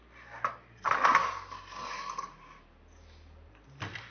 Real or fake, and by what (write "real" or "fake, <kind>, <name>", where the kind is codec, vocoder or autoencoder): real